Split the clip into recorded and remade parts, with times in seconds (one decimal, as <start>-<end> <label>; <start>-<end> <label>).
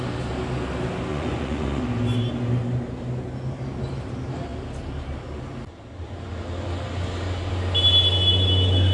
0.0-1.1 recorded; 1.1-1.8 remade; 1.8-8.9 recorded